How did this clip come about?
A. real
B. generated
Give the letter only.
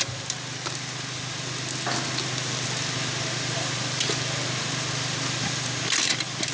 A